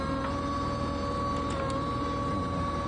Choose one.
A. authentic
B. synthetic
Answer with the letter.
A